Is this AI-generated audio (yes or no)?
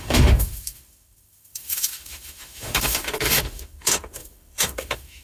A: yes